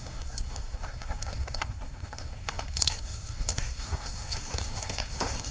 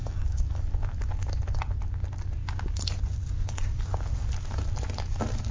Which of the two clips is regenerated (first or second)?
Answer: first